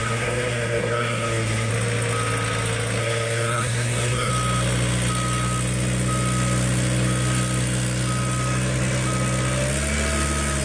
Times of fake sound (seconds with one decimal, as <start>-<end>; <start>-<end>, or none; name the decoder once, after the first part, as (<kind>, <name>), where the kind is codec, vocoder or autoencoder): 0.0-1.7 (codec, SNAC); 3.0-4.3